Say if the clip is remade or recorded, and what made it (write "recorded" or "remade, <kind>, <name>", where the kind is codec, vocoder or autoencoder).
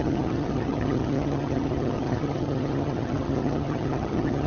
remade, vocoder, HiFi-GAN